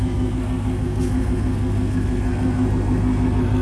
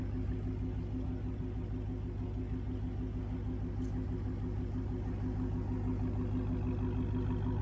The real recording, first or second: second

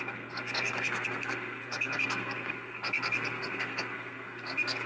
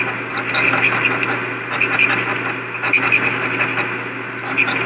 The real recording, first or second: second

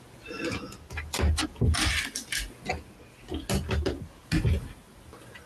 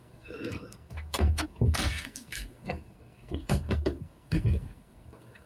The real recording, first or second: first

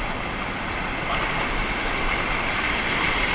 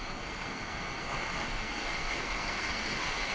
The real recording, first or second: first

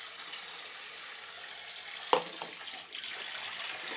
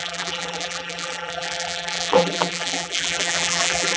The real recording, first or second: first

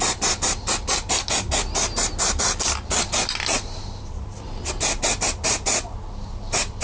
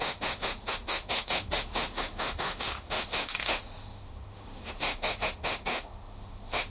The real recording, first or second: first